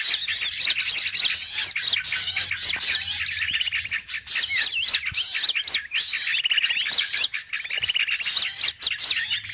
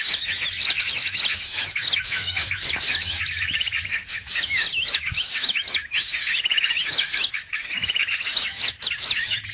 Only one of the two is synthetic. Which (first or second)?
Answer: second